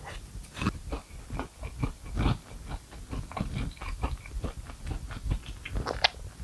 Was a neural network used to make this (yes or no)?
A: no